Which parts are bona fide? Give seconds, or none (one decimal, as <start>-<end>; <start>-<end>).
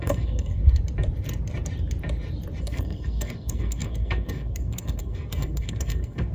0.6-2.6